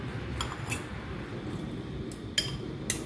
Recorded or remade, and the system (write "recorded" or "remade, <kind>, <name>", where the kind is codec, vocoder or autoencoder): recorded